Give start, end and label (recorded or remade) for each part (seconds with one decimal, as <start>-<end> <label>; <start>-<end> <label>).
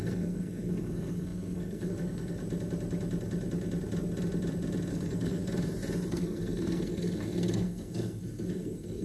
0.0-2.4 remade; 2.4-4.9 recorded; 4.9-5.4 remade; 5.4-6.1 recorded; 6.1-9.0 remade